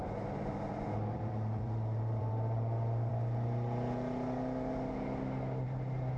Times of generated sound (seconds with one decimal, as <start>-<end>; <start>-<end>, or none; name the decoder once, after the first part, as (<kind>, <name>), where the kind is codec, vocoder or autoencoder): 0.0-3.1 (vocoder, BigVGAN v2)